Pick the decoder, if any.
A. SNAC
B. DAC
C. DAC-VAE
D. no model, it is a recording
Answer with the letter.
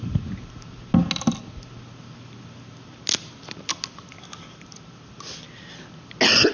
D